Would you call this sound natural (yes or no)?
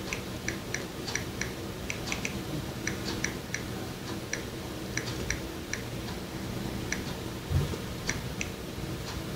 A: no